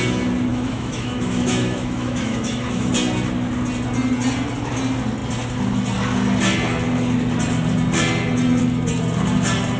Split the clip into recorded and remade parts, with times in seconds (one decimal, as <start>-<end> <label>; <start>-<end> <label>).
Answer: 0.0-0.5 recorded; 0.5-2.9 remade; 2.9-9.8 recorded